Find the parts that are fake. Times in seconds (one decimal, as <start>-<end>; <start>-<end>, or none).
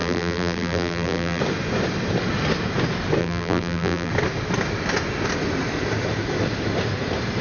0.0-1.4; 3.2-4.1